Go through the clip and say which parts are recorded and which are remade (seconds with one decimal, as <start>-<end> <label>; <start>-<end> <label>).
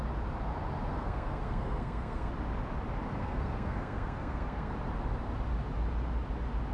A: 0.0-0.9 recorded; 0.9-2.3 remade; 2.3-3.2 recorded; 3.2-4.7 remade; 4.7-6.7 recorded